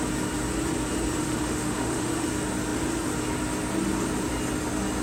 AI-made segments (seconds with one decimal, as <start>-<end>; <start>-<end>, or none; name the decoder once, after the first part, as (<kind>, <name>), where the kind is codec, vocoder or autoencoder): 1.2-2.1 (autoencoder, DAC-VAE)